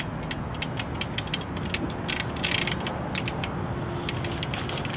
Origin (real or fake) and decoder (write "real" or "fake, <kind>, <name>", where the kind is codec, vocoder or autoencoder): real